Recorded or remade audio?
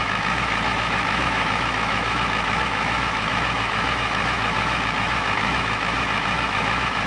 remade